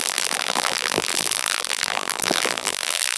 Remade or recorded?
remade